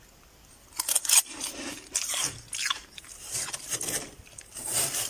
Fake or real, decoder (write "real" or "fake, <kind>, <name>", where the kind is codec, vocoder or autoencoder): real